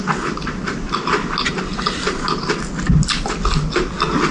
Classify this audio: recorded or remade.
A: recorded